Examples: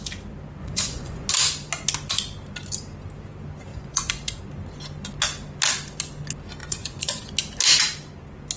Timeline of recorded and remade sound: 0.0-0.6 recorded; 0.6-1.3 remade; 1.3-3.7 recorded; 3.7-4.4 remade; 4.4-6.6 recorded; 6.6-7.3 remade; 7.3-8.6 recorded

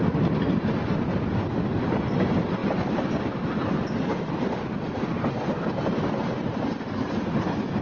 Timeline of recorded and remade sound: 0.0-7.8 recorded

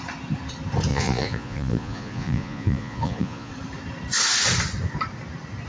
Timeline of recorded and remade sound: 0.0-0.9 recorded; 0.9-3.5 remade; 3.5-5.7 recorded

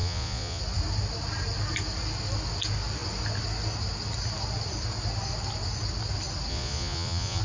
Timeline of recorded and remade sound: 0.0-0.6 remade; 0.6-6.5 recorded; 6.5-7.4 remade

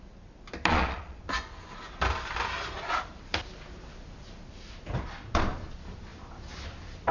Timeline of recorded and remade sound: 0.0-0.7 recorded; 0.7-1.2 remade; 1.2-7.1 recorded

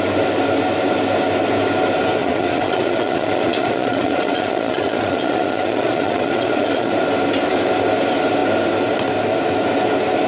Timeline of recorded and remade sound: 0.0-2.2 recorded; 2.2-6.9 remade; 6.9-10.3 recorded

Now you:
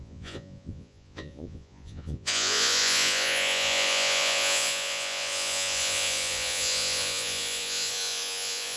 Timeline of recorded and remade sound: 0.0-8.8 remade

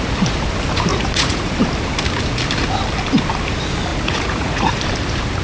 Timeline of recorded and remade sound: 0.0-0.9 recorded; 0.9-1.5 remade; 1.5-3.9 recorded; 3.9-4.7 remade; 4.7-5.4 recorded